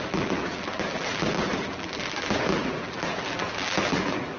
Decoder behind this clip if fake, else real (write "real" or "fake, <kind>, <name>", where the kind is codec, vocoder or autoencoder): fake, vocoder, BigVGAN v2